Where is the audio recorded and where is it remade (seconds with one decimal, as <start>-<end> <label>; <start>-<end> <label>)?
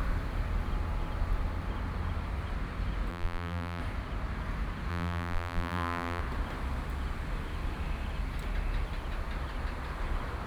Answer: 0.0-3.1 recorded; 3.1-3.8 remade; 3.8-4.9 recorded; 4.9-6.2 remade; 6.2-10.5 recorded